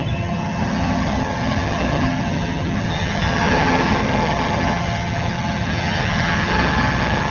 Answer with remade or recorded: remade